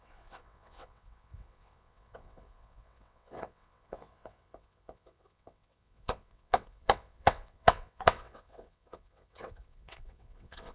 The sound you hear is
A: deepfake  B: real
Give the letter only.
A